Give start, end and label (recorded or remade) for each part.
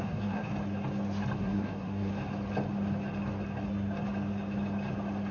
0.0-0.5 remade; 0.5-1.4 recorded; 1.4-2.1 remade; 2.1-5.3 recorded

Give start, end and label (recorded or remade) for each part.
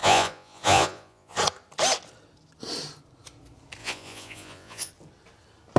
0.0-1.4 remade; 1.4-3.8 recorded; 3.8-4.9 remade; 4.9-5.8 recorded